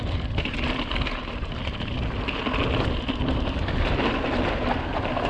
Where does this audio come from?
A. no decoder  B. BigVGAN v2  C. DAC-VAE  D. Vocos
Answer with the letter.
A